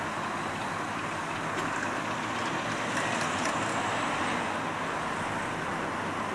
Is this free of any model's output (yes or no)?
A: yes